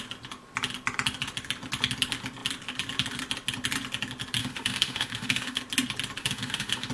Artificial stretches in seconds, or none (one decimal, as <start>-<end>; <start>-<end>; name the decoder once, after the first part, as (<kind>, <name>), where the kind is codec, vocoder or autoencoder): 4.4-5.6 (autoencoder, DAC-VAE); 6.2-6.9